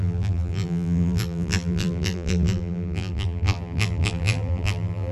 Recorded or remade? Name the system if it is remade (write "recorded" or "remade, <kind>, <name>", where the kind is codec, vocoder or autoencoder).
remade, vocoder, BigVGAN v2